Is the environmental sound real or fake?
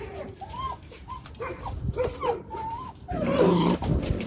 fake